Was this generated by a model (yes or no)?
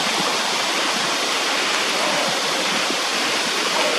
no